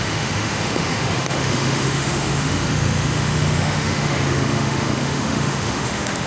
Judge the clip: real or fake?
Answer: fake